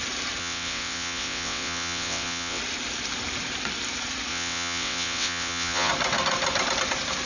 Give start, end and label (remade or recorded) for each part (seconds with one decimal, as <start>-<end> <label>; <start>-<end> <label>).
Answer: 0.0-0.4 recorded; 0.4-2.6 remade; 2.6-4.3 recorded; 4.3-5.9 remade; 5.9-7.3 recorded